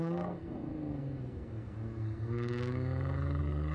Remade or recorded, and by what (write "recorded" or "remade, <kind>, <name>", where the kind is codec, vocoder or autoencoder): remade, codec, SNAC